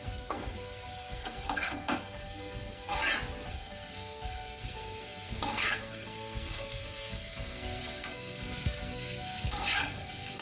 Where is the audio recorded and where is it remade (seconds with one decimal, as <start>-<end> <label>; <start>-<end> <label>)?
0.0-3.0 remade; 3.0-3.5 recorded; 3.5-10.4 remade